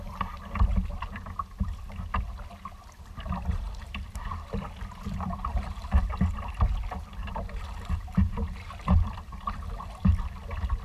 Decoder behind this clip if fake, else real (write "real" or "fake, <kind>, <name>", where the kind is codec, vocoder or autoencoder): real